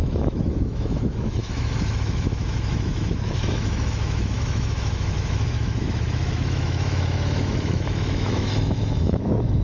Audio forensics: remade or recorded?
remade